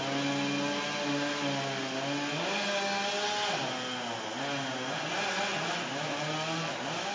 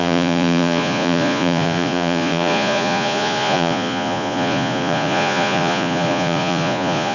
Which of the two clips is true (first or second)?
first